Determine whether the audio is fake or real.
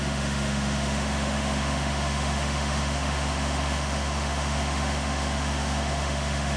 fake